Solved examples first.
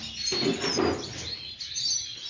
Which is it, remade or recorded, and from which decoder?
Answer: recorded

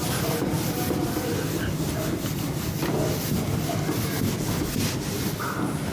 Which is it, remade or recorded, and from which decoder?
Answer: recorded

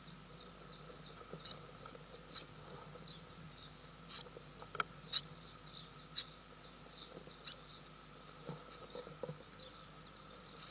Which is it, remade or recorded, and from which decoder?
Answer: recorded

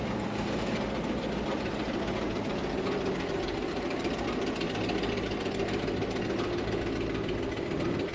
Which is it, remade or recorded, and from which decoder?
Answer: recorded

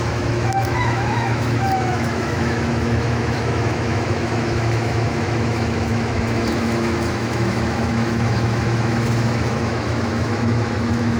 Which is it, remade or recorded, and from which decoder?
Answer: remade, autoencoder, DAC-VAE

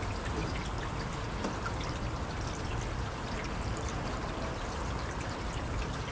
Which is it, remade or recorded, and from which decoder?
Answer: recorded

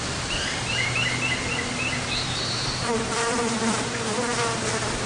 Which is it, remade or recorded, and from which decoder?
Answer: remade, vocoder, BigVGAN v2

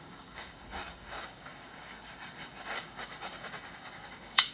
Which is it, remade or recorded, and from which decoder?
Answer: remade, codec, DAC